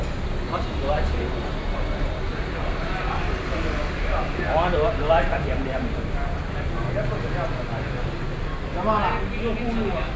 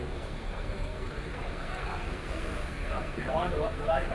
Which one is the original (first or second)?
first